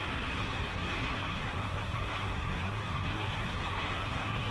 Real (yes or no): no